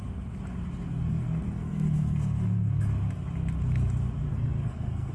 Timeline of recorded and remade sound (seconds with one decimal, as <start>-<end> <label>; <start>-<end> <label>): 0.0-1.1 recorded; 1.1-2.8 remade; 2.8-4.3 recorded; 4.3-5.1 remade